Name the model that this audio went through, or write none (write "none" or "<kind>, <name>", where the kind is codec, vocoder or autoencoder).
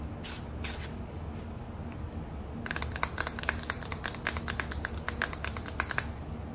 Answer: none